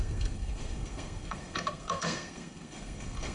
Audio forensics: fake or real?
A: fake